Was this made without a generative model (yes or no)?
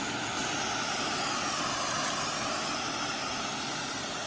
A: yes